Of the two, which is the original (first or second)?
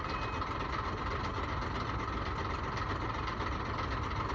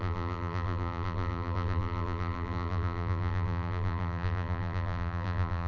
first